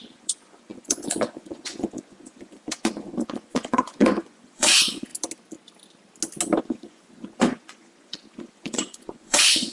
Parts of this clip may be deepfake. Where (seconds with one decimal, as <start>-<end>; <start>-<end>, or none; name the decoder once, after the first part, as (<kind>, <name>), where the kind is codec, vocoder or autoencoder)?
0.0-5.1 (vocoder, Vocos); 6.6-9.7